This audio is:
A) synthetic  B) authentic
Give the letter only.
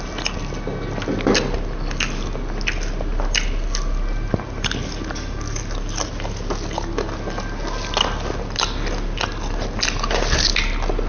B